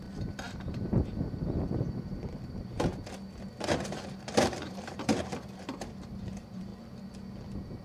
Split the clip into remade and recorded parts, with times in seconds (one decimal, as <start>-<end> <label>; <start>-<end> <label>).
0.0-2.9 remade; 2.9-3.5 recorded; 3.5-5.1 remade; 5.1-5.8 recorded; 5.8-6.7 remade; 6.7-7.8 recorded